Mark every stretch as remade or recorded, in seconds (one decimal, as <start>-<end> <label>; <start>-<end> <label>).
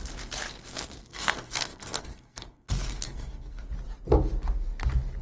0.0-0.7 recorded; 0.7-3.7 remade; 3.7-5.2 recorded